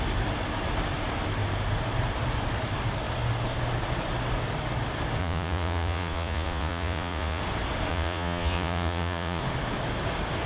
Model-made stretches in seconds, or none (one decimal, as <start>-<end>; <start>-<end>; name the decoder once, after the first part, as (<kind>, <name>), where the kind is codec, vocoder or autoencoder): 5.2-7.4 (vocoder, Vocos); 7.9-9.4